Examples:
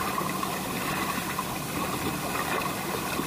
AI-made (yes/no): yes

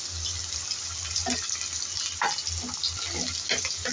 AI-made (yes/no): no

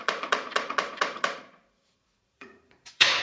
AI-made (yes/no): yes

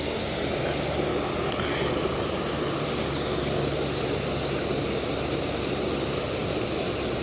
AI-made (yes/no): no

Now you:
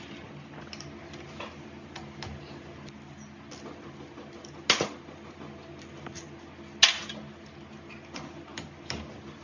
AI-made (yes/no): no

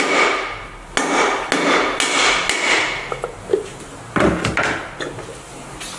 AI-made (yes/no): no